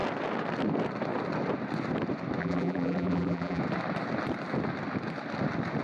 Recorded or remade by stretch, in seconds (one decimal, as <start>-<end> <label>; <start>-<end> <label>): 0.0-2.4 recorded; 2.4-3.6 remade; 3.6-5.8 recorded